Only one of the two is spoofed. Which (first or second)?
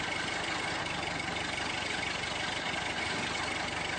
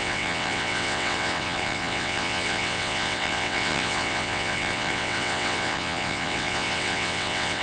second